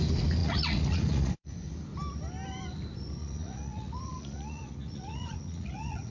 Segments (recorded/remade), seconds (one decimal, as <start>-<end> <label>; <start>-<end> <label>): 0.0-0.4 recorded; 0.4-1.5 remade; 1.5-3.2 recorded; 3.2-6.1 remade